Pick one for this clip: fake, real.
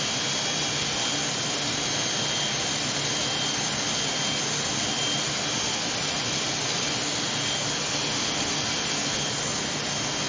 real